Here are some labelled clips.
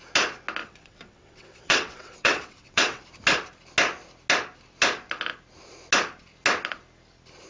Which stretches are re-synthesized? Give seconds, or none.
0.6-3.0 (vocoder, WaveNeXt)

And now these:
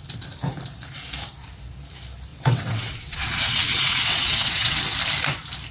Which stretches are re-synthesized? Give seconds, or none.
2.3-4.8 (vocoder, WaveNeXt)

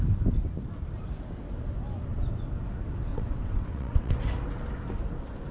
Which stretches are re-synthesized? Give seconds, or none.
3.1-4.1 (vocoder, WaveNeXt)

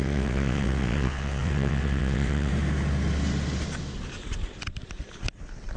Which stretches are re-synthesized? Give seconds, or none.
0.0-2.5 (vocoder, WaveNeXt)

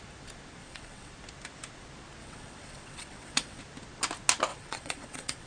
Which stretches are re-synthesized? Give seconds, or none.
0.6-1.1 (vocoder, WaveNeXt); 2.2-3.6; 4.5-5.5

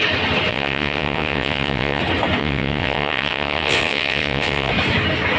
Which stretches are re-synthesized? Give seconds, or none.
0.5-2.0 (vocoder, WaveNeXt); 2.4-4.7